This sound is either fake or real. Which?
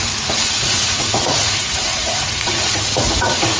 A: fake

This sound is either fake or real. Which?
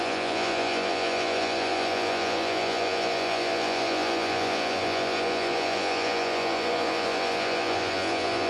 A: fake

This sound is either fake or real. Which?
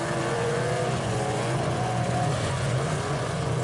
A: fake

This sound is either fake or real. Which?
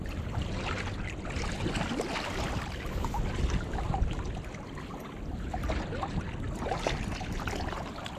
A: real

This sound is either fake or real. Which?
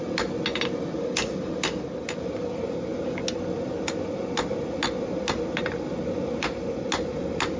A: real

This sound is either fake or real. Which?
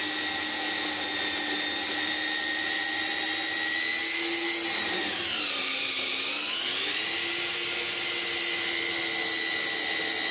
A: real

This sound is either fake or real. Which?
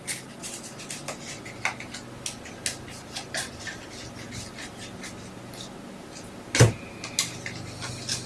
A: real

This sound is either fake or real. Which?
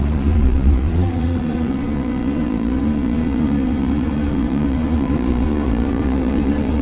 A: fake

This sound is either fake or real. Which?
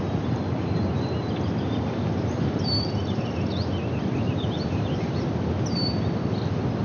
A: real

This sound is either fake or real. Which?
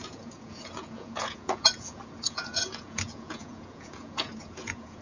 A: fake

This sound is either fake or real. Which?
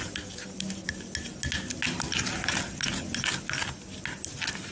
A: real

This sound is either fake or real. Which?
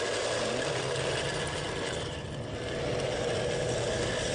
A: real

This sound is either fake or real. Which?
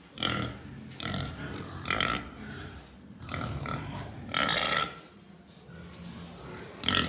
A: real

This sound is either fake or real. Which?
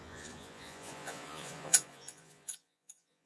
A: fake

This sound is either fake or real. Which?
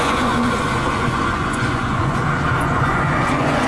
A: fake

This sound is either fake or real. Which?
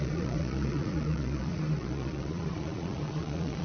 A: fake